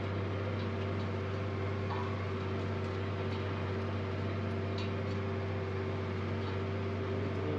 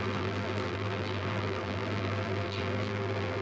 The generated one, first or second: second